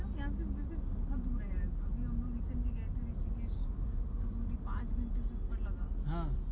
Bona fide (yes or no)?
yes